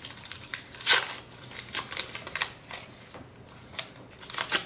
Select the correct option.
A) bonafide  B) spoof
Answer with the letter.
A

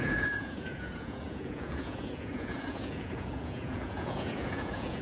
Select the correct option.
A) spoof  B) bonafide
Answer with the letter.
A